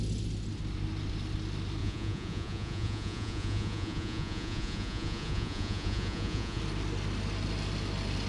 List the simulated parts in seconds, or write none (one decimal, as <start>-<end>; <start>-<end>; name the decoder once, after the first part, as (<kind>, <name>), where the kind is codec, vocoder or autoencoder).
1.8-6.6 (vocoder, Vocos)